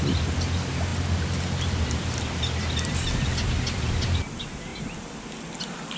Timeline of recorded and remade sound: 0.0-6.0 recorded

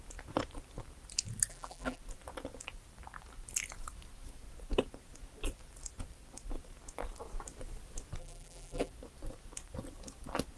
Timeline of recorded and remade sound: 0.0-1.5 recorded; 1.5-2.0 remade; 2.0-8.2 recorded; 8.2-8.9 remade; 8.9-10.6 recorded

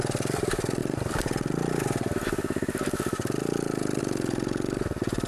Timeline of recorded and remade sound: 0.0-0.8 recorded; 0.8-4.0 remade; 4.0-5.3 recorded

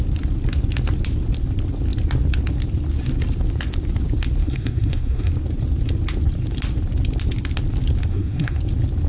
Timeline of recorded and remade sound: 0.0-4.4 recorded; 4.4-5.3 remade; 5.3-8.1 recorded; 8.1-8.6 remade; 8.6-9.1 recorded